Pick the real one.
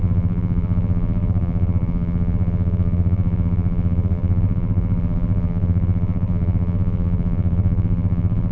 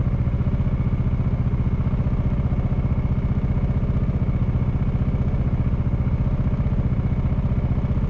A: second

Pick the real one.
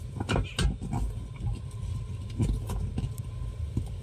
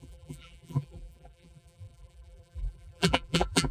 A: first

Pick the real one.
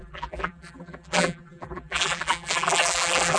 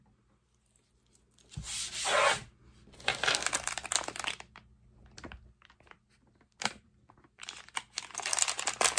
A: second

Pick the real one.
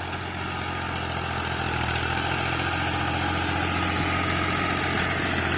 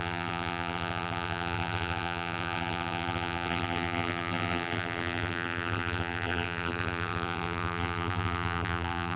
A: first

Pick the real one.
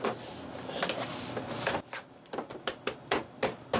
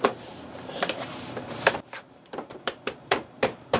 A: first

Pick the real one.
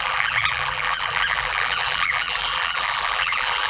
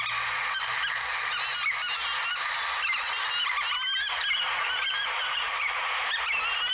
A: second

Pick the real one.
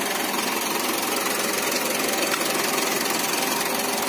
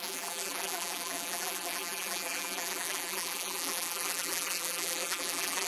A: first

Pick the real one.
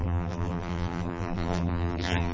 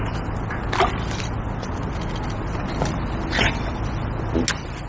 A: second